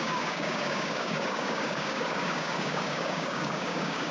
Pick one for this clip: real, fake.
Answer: fake